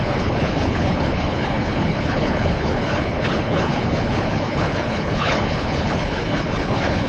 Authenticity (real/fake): fake